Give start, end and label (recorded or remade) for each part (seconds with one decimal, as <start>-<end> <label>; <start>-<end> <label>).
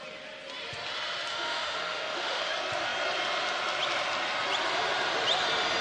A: 0.0-1.3 recorded; 1.3-2.5 remade; 2.5-5.8 recorded